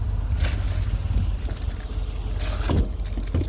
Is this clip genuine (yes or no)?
yes